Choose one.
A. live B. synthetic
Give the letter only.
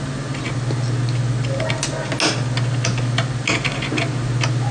A